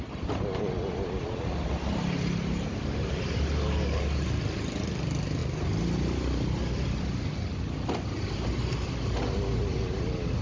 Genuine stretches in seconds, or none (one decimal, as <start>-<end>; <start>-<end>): 0.0-10.4